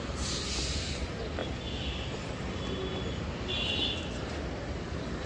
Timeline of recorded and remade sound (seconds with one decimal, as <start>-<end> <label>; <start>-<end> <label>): 0.0-5.3 recorded

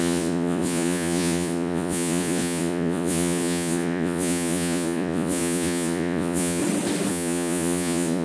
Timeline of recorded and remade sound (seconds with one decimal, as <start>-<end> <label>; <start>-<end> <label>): 0.0-6.6 remade; 6.6-7.1 recorded; 7.1-8.2 remade

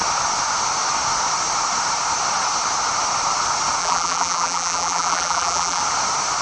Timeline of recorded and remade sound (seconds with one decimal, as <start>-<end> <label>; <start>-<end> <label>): 0.0-3.8 recorded; 3.8-5.8 remade; 5.8-6.4 recorded

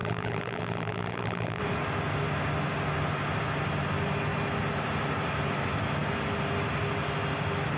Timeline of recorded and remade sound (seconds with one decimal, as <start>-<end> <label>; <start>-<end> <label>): 0.0-1.6 remade; 1.6-7.8 recorded

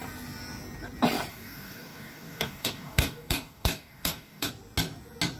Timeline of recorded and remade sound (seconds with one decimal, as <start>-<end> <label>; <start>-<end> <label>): 0.0-1.3 recorded; 1.3-4.5 remade; 4.5-5.4 recorded